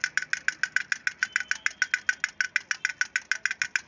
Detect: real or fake real